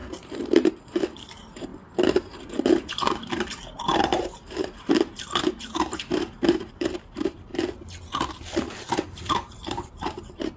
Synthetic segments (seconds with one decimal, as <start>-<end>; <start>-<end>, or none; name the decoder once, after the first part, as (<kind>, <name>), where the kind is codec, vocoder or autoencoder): 0.7-7.5 (vocoder, BigVGAN v2); 8.9-10.6